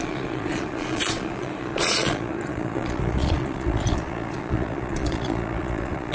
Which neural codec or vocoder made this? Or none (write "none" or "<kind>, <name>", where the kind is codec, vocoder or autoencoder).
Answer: vocoder, Vocos